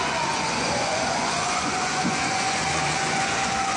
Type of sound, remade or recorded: remade